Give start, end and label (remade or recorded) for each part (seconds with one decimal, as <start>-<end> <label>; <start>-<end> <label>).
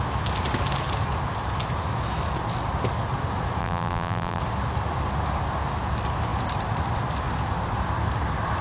0.0-3.6 recorded; 3.6-4.4 remade; 4.4-8.6 recorded